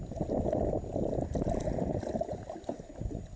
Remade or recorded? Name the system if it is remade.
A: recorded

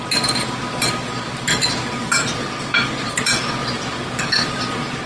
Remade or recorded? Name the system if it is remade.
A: recorded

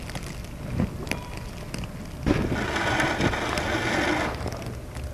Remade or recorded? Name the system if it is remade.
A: recorded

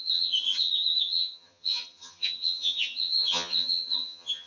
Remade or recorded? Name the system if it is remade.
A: remade, vocoder, HiFi-GAN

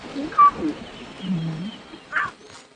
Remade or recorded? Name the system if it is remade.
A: recorded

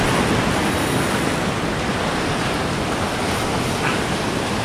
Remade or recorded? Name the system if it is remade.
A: recorded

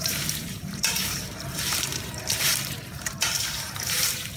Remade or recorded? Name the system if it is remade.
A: remade, vocoder, BigVGAN v2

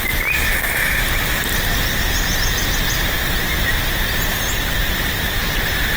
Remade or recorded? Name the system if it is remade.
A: recorded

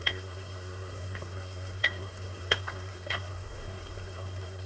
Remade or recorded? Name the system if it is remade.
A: remade, codec, SNAC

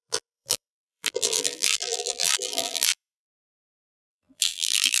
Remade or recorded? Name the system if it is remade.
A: remade, vocoder, BigVGAN v2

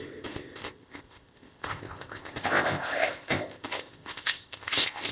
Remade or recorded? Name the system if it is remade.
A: remade, codec, ZipCodec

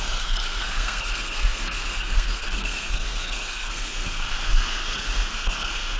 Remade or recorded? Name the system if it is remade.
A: remade, codec, SNAC